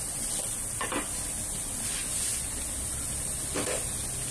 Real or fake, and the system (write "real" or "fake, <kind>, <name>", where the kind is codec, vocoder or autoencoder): real